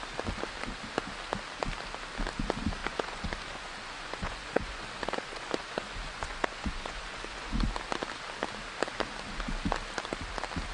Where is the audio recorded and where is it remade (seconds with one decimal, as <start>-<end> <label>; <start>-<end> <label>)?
0.0-2.8 recorded; 2.8-7.7 remade; 7.7-10.7 recorded